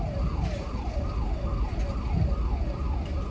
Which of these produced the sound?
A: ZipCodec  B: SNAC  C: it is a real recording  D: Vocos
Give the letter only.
C